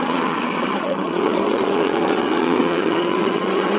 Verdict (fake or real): fake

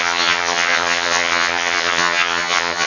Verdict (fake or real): fake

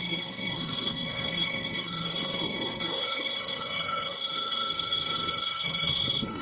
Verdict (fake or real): fake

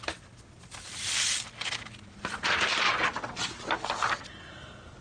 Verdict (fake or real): real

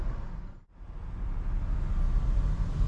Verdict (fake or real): real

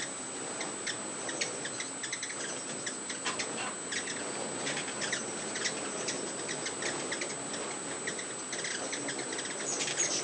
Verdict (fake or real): real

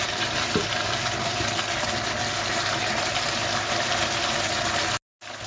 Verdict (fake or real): real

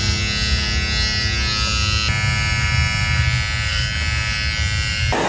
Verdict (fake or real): real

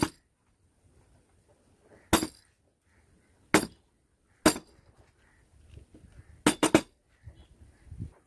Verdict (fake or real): real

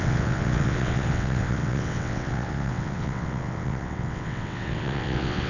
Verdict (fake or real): fake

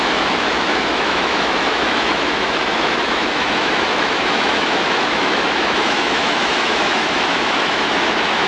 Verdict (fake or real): fake